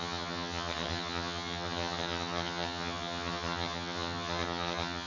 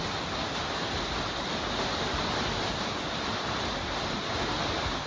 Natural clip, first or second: second